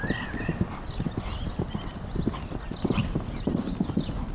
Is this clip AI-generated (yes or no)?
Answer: no